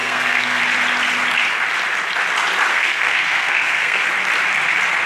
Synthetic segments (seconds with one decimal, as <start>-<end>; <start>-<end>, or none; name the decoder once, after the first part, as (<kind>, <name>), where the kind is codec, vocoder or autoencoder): 0.0-0.6 (codec, SNAC); 2.7-4.0